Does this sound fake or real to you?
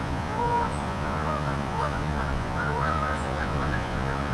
fake